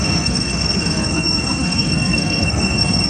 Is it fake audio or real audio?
fake